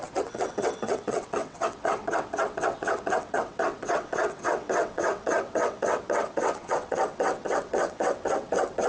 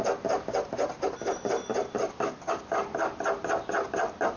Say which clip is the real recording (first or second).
second